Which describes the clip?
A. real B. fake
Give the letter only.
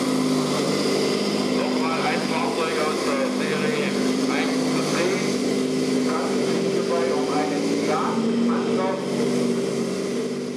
A